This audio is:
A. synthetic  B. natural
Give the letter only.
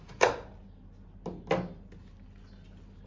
B